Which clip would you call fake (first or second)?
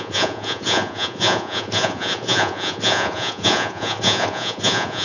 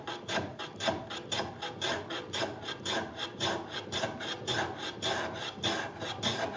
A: first